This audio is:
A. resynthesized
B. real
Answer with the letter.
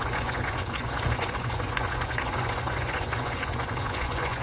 A